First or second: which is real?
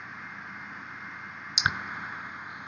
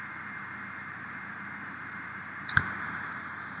first